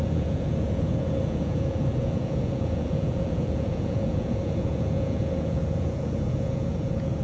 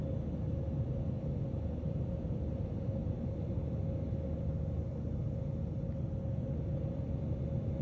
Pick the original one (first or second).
second